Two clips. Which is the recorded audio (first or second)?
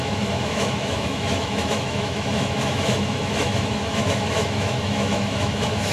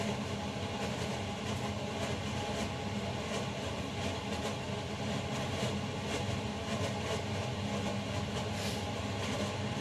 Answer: second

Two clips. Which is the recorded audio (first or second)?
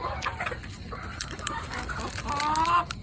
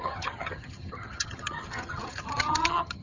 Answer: first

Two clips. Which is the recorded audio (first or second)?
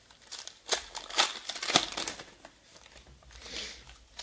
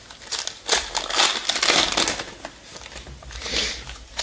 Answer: second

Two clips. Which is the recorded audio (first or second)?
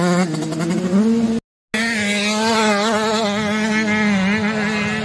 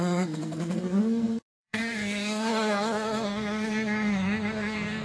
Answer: first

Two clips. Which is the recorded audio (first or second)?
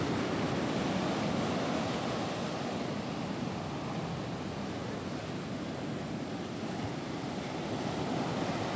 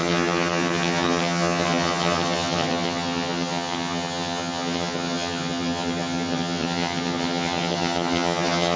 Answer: first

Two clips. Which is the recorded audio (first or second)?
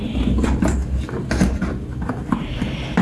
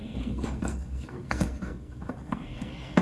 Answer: first